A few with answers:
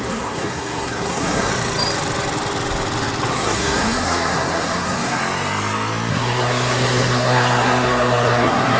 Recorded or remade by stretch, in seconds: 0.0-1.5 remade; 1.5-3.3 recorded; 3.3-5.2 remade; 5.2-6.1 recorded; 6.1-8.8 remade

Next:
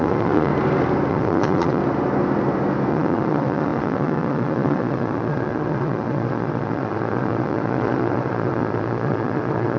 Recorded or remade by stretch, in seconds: 0.0-0.5 remade; 0.5-1.1 recorded; 1.1-1.8 remade; 1.8-2.9 recorded; 2.9-9.8 remade

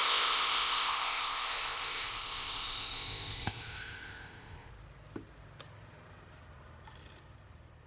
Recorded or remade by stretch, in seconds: 0.0-4.7 remade; 4.7-7.9 recorded

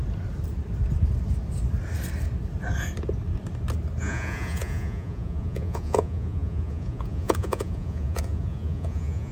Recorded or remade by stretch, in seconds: 0.0-4.0 recorded; 4.0-9.3 remade

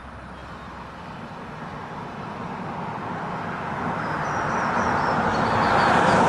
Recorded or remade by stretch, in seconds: 0.0-6.3 recorded

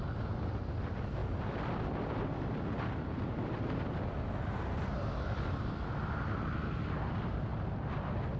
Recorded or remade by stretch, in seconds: 0.0-1.2 recorded; 1.2-6.2 remade; 6.2-8.4 recorded